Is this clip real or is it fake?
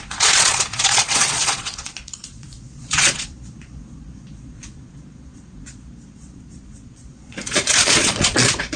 fake